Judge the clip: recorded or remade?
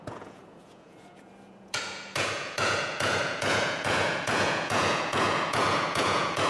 remade